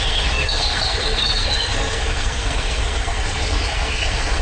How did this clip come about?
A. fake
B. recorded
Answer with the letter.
A